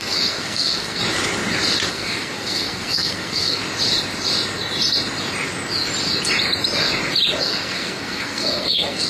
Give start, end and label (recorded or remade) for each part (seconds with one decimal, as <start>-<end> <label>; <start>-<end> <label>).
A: 0.0-1.0 remade; 1.0-1.9 recorded; 1.9-3.6 remade; 3.6-7.4 recorded; 7.4-9.1 remade